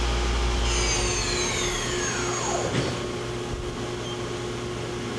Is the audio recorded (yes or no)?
yes